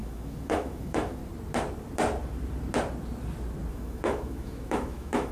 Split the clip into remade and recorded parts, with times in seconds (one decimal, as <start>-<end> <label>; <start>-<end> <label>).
0.0-1.2 remade; 1.2-3.7 recorded; 3.7-5.3 remade